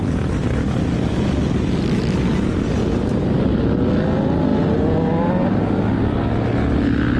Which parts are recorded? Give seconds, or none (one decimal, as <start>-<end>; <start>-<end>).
0.0-2.8; 3.4-7.2

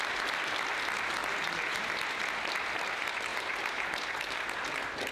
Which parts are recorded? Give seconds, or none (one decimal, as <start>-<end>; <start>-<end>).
0.0-1.2; 1.8-3.3; 4.1-5.1